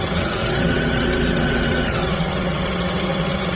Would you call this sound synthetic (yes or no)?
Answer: yes